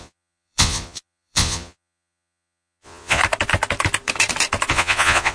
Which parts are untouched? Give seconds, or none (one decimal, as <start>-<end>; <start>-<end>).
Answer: 3.2-4.7